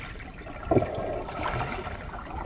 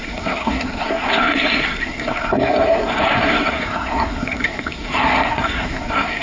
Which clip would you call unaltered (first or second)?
first